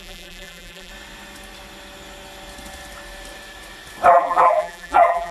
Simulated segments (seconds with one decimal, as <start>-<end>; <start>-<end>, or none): 0.0-0.9; 4.1-5.3